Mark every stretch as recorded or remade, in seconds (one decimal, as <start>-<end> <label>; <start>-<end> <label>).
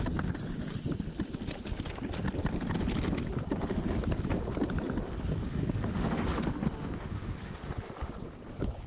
0.0-5.4 recorded; 5.4-7.6 remade; 7.6-8.9 recorded